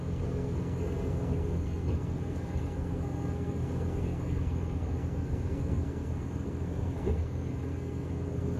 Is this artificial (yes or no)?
yes